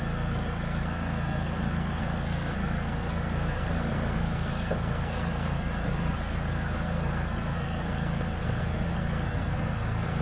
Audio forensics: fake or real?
fake